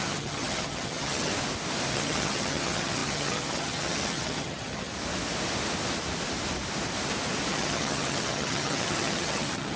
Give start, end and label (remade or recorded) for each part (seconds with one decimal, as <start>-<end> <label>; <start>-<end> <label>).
0.0-1.3 remade; 1.3-1.9 recorded; 1.9-4.9 remade; 4.9-7.5 recorded; 7.5-9.8 remade